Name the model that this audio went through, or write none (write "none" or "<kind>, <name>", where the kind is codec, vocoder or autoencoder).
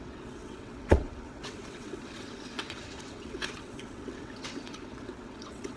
vocoder, WaveNeXt